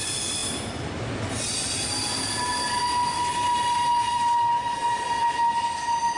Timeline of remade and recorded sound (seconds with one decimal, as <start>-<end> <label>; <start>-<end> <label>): 0.0-0.4 recorded; 0.4-0.9 remade; 0.9-6.2 recorded

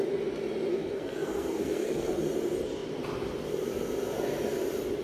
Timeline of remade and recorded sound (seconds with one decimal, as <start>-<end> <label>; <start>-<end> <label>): 0.0-0.7 recorded; 0.7-2.2 remade; 2.2-5.0 recorded

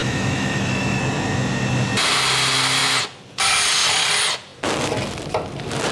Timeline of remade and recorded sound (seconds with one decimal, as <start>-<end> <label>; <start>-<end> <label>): 0.0-1.0 remade; 1.0-5.9 recorded

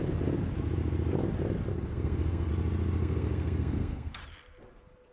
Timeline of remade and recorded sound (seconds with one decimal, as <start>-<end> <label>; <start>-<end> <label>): 0.0-1.7 recorded; 1.7-2.5 remade; 2.5-3.0 recorded; 3.0-4.1 remade; 4.1-5.1 recorded

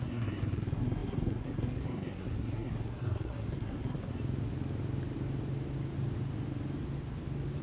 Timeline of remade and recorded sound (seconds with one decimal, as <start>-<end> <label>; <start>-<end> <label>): 0.0-4.1 remade; 4.1-7.6 recorded

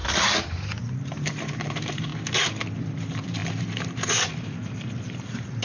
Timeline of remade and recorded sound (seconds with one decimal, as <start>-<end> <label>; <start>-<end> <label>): 0.0-1.0 recorded; 1.0-2.1 remade; 2.1-3.0 recorded; 3.0-5.6 remade